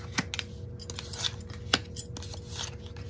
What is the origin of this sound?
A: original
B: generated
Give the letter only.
A